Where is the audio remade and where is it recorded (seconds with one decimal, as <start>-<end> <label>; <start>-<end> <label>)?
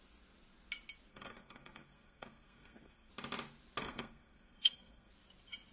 0.0-1.1 recorded; 1.1-3.1 remade; 3.1-3.8 recorded; 3.8-5.1 remade; 5.1-5.7 recorded